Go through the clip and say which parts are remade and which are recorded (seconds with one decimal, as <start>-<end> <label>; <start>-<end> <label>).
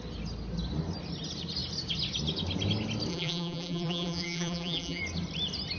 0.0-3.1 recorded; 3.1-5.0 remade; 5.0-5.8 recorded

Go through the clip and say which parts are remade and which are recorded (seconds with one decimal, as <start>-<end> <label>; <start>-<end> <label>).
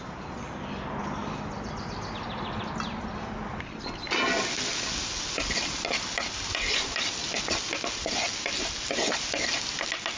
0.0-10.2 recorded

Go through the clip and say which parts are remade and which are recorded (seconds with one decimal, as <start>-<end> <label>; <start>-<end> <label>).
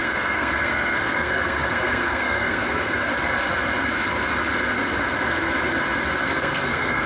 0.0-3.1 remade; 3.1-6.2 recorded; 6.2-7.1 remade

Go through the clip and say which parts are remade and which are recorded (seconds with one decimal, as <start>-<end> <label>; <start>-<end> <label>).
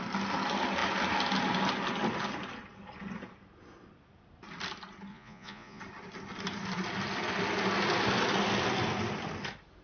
0.0-5.1 recorded; 5.1-5.8 remade; 5.8-9.8 recorded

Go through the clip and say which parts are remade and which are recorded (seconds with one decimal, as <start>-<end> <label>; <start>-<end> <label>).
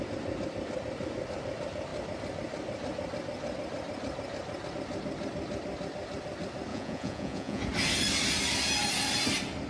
0.0-6.7 recorded; 6.7-7.6 remade; 7.6-9.7 recorded